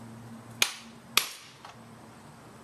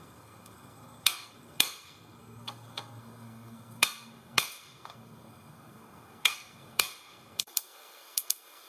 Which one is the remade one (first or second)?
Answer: second